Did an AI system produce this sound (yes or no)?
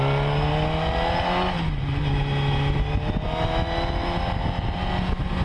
no